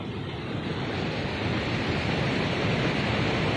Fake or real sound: real